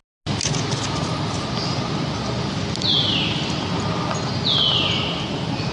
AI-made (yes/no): no